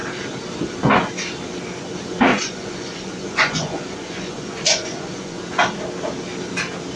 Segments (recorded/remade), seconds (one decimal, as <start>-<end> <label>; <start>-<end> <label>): 0.0-2.3 recorded; 2.3-5.4 remade; 5.4-7.0 recorded